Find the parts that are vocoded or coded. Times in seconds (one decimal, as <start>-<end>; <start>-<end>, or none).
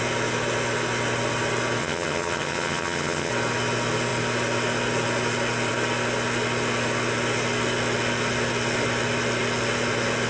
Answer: 1.8-3.3